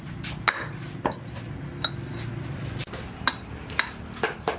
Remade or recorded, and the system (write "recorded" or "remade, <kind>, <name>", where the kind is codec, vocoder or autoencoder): recorded